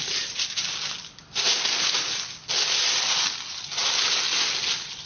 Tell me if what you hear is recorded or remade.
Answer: recorded